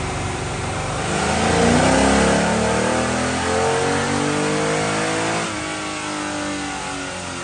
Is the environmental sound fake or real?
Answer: real